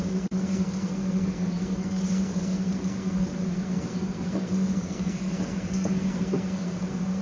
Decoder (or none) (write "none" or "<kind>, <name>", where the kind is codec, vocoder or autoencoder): codec, SNAC